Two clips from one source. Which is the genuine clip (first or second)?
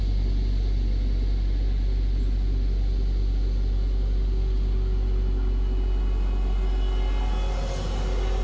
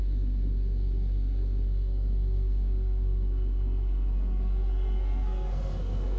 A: first